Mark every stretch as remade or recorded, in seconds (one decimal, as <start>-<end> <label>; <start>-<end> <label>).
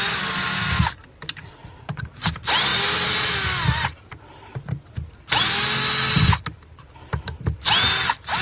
0.0-1.4 recorded; 1.4-2.0 remade; 2.0-8.4 recorded